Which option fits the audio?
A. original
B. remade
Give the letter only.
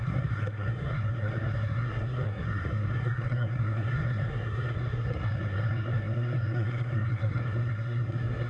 B